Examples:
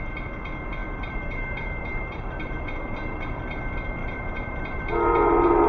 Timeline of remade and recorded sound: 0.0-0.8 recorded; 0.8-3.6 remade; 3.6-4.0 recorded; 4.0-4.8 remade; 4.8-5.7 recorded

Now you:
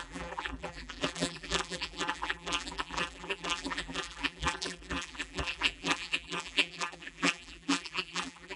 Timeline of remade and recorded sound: 0.0-8.6 remade

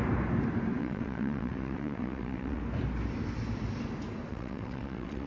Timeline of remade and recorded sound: 0.0-0.8 recorded; 0.8-2.6 remade; 2.6-4.3 recorded; 4.3-5.3 remade